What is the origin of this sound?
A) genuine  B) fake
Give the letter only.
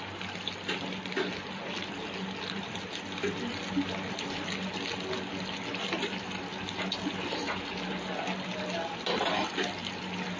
A